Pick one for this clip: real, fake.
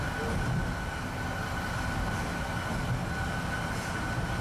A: real